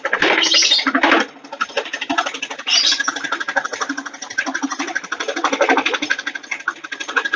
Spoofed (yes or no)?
no